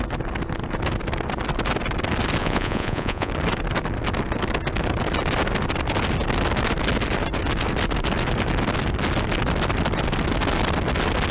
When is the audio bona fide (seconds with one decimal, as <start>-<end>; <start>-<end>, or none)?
0.0-2.4; 3.3-11.3